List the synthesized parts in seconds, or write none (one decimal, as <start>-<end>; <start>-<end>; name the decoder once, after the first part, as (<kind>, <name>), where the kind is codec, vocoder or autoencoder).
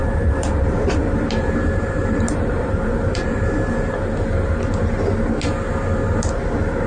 0.0-4.1 (vocoder, BigVGAN v2)